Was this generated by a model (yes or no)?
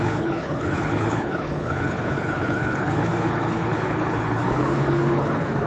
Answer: yes